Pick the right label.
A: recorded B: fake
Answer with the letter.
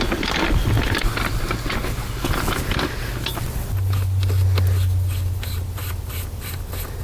A